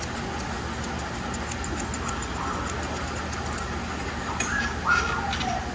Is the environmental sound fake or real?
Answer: real